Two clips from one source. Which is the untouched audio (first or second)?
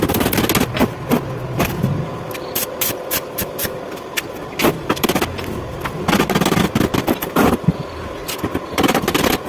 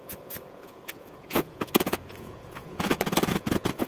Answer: first